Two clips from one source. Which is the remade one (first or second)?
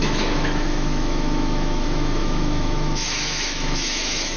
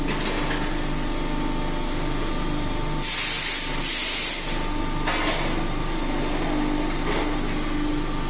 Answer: first